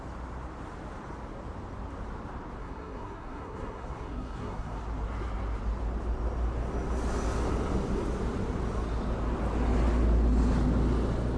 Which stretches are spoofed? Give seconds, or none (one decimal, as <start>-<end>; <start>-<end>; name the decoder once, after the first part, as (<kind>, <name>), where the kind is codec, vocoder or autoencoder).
2.6-4.8 (codec, SNAC)